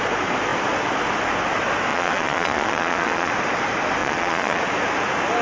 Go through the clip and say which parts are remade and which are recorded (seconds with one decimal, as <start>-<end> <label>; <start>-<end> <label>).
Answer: 0.0-1.9 recorded; 1.9-3.3 remade; 3.3-4.0 recorded; 4.0-4.6 remade; 4.6-5.4 recorded

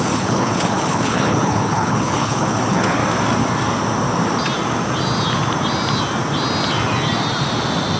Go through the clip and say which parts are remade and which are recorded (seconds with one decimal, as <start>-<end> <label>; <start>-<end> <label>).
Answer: 0.0-3.0 remade; 3.0-8.0 recorded

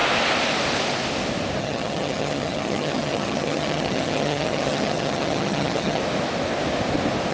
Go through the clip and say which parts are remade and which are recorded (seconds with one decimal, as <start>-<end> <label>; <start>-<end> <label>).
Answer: 0.0-1.6 recorded; 1.6-6.0 remade; 6.0-7.3 recorded

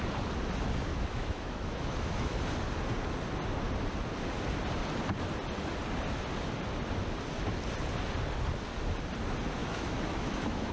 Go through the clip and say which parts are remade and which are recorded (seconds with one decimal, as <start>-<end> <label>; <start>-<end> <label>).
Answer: 0.0-0.9 recorded; 0.9-2.4 remade; 2.4-9.6 recorded; 9.6-10.7 remade

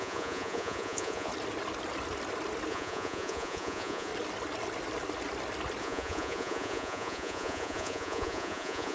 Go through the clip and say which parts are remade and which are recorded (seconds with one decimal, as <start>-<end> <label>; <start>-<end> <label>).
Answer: 0.0-1.3 remade; 1.3-2.7 recorded; 2.7-4.1 remade; 4.1-5.8 recorded; 5.8-8.9 remade